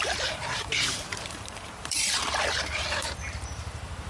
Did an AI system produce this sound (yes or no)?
yes